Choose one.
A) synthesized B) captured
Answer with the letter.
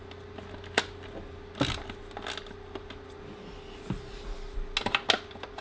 B